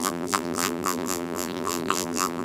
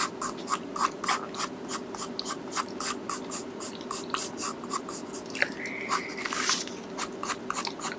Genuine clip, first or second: second